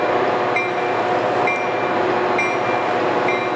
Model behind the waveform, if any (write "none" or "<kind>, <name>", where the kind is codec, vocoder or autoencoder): none